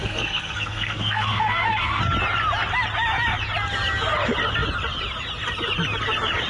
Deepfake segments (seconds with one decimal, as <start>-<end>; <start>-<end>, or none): 0.0-2.0

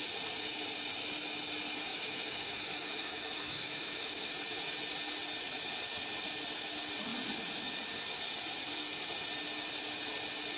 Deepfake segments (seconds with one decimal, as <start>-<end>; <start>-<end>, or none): 1.9-4.3

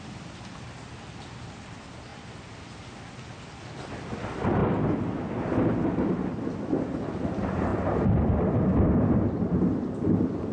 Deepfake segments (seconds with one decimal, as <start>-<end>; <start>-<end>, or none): 0.0-4.6; 5.4-7.7; 8.3-10.5

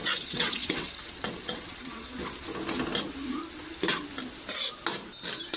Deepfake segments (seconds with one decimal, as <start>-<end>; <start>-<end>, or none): 0.0-2.2

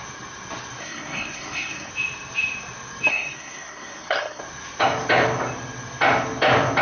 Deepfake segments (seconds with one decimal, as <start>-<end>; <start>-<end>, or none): 0.8-1.9; 3.1-4.4

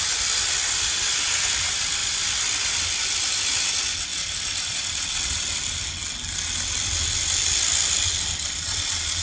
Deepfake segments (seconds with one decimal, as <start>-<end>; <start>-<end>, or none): none

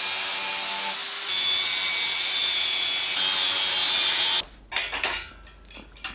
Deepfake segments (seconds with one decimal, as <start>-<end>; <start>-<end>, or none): none

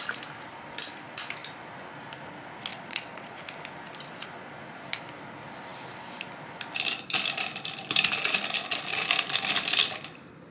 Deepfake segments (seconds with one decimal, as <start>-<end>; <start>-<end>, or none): 2.7-3.4